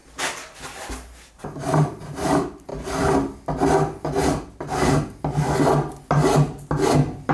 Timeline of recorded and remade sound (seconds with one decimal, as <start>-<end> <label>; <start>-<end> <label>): 0.0-1.3 recorded; 1.3-2.7 remade; 2.7-7.3 recorded

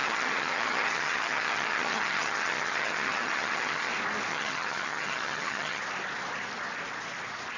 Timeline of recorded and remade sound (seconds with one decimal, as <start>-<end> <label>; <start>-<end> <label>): 0.0-3.9 remade; 3.9-4.3 recorded; 4.3-5.8 remade; 5.8-7.6 recorded

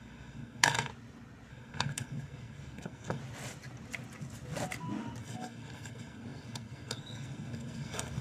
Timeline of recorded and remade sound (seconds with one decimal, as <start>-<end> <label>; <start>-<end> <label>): 0.0-0.9 remade; 0.9-1.5 recorded; 1.5-3.2 remade; 3.2-5.2 recorded; 5.2-8.2 remade